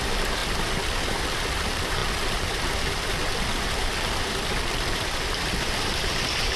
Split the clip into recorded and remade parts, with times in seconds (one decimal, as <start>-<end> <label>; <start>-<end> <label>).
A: 0.0-0.4 remade; 0.4-1.6 recorded; 1.6-6.6 remade